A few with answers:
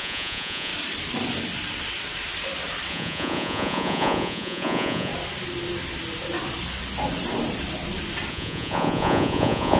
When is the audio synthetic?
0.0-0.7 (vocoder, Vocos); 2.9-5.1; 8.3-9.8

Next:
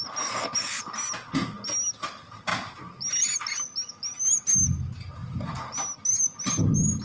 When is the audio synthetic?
none